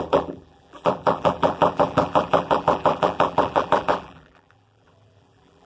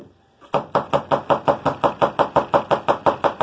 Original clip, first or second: second